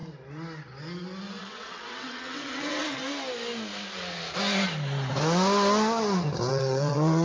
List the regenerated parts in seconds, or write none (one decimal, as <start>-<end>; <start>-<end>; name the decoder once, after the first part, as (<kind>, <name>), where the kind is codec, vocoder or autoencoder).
1.4-3.0 (vocoder, WaveNeXt); 6.5-7.2